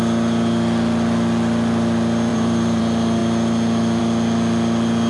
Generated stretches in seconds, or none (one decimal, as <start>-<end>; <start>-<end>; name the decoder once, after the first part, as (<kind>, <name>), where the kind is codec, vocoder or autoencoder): 2.3-2.8 (vocoder, BigVGAN v2)